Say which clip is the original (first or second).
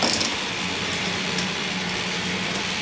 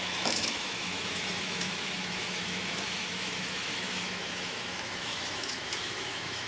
first